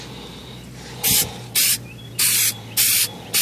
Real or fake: real